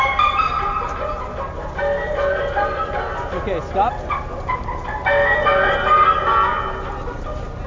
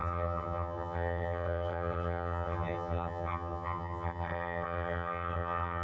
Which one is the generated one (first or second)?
second